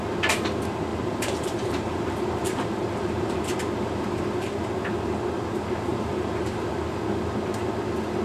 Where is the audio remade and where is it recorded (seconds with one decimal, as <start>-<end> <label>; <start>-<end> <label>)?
0.0-0.9 recorded; 0.9-4.7 remade; 4.7-5.9 recorded; 5.9-6.7 remade; 6.7-8.2 recorded